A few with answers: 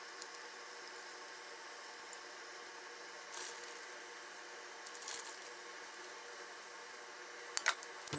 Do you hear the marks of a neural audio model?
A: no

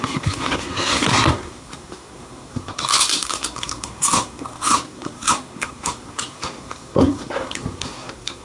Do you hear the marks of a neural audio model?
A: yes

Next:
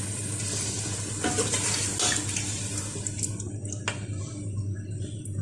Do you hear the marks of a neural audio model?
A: no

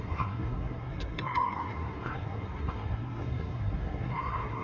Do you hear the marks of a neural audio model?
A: yes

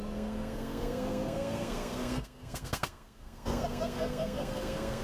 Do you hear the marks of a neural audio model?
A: yes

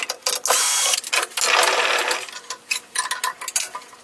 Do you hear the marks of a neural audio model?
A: no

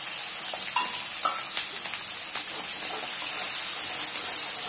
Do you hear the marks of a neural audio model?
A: no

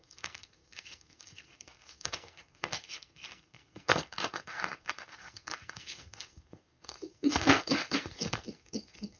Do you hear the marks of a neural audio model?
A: yes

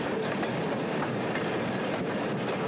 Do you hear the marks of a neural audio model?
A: no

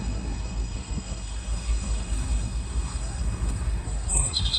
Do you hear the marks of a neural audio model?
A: yes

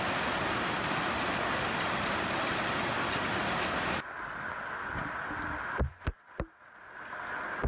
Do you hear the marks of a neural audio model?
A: no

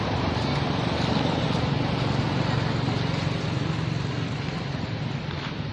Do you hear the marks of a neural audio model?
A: no